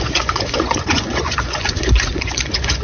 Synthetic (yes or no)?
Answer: yes